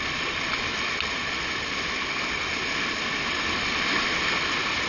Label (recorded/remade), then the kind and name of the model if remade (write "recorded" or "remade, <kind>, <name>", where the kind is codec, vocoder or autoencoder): recorded